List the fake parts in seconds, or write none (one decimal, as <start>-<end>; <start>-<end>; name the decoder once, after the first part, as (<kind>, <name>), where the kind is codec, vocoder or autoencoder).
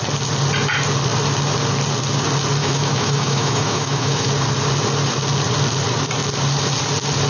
2.6-4.3 (autoencoder, DAC-VAE)